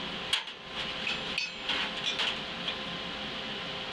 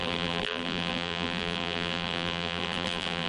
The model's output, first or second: second